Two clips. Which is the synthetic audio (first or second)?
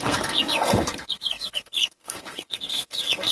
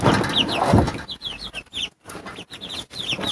first